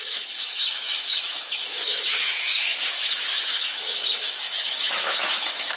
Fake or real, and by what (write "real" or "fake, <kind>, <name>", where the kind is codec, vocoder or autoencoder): fake, autoencoder, DAC-VAE